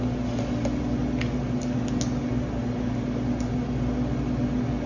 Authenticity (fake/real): real